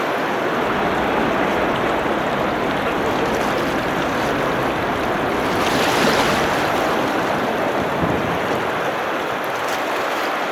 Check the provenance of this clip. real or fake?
real